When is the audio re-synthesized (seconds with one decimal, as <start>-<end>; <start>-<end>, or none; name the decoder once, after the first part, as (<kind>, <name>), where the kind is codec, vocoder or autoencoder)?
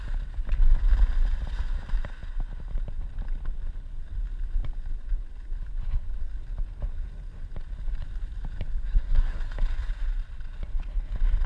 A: 8.8-9.4 (codec, SNAC)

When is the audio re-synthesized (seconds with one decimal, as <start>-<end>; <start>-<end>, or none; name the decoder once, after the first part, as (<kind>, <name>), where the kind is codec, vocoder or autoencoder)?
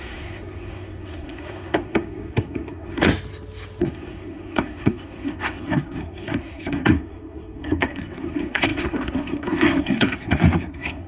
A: 0.0-3.1 (codec, SNAC); 3.8-11.1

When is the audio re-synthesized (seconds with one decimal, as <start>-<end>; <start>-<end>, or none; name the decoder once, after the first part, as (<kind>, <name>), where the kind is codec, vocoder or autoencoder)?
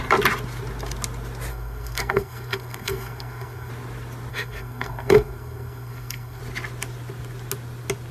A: 1.5-3.7 (codec, SNAC); 4.3-6.4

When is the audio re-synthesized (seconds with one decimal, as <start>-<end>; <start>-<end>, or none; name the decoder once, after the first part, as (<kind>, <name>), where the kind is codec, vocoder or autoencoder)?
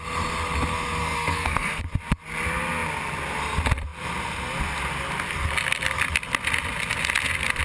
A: 1.0-1.8 (codec, SNAC)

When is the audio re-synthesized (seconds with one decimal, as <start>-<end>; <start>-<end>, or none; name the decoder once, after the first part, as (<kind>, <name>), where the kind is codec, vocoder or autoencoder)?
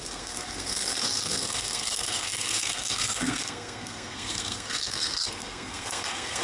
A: 0.0-6.4 (codec, SNAC)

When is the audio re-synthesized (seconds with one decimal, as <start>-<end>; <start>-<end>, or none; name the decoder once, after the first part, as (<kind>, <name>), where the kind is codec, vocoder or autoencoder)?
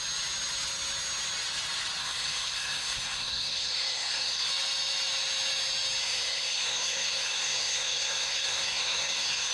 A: 2.0-4.5 (codec, SNAC); 6.0-9.5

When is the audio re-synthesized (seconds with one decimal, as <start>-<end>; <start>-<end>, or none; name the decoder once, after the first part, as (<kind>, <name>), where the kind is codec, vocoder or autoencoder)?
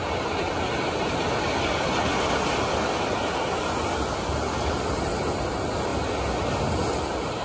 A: none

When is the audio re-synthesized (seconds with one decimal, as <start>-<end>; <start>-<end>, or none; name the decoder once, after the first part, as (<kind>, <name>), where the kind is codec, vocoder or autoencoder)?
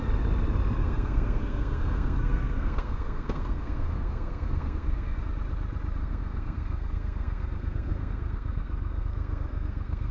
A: 0.8-5.2 (codec, SNAC); 6.0-10.1